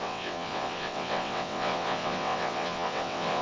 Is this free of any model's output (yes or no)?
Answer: no